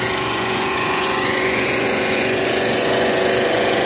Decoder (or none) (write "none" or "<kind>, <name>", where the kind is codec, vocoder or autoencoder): vocoder, Vocos